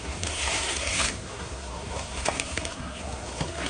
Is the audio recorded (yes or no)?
no